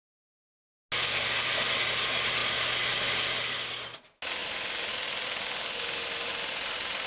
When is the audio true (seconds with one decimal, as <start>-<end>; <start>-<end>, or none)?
0.0-7.1